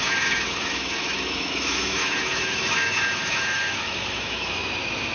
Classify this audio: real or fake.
fake